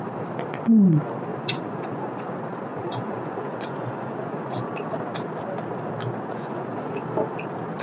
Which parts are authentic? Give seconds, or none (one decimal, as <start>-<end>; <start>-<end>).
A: 0.0-1.3; 2.3-2.7; 4.7-6.3; 6.9-7.8